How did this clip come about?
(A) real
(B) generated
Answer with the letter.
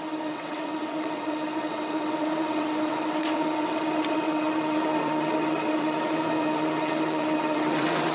B